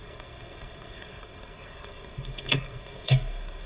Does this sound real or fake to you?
fake